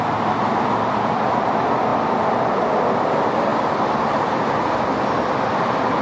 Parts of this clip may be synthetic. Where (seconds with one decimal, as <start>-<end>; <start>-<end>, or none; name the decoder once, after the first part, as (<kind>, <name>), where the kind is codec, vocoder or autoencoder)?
none